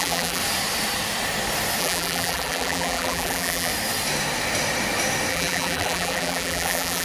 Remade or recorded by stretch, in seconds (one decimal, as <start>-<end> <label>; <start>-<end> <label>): 0.0-0.4 remade; 0.4-1.8 recorded; 1.8-3.7 remade; 3.7-5.3 recorded; 5.3-7.0 remade